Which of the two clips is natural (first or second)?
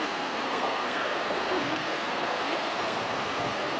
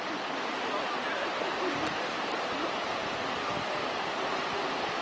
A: second